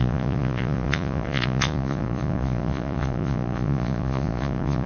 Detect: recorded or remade remade